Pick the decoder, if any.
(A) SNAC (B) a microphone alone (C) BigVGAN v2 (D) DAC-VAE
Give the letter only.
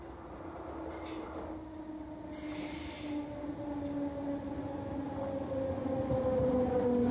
B